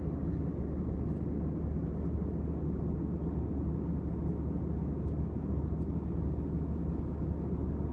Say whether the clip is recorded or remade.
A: recorded